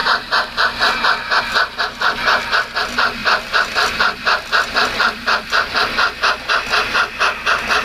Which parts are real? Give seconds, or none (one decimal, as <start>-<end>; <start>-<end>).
1.4-3.2; 6.2-7.8